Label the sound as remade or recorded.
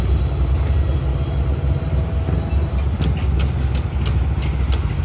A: recorded